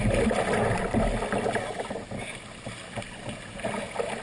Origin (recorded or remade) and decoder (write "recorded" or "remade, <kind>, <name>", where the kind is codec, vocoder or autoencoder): recorded